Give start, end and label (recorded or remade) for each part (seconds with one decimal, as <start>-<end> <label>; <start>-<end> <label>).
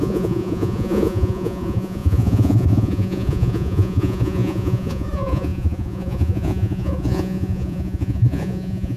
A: 0.0-9.0 remade